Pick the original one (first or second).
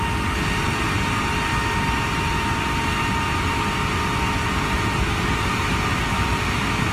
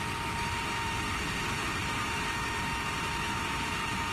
first